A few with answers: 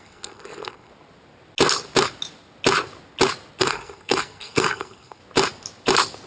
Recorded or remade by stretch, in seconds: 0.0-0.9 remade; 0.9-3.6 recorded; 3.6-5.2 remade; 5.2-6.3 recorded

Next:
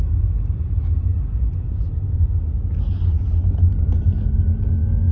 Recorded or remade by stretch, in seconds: 0.0-5.1 recorded

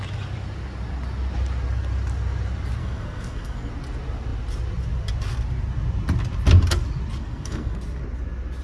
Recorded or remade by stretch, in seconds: 0.0-2.8 recorded; 2.8-3.7 remade; 3.7-7.2 recorded; 7.2-7.8 remade; 7.8-8.6 recorded

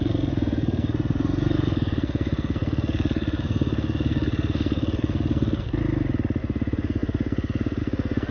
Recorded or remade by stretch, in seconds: 0.0-5.8 remade; 5.8-6.4 recorded; 6.4-8.3 remade